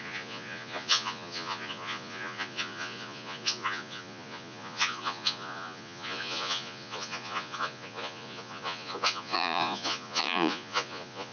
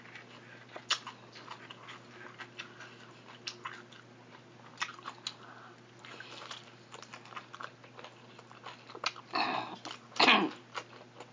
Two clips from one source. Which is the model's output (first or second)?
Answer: first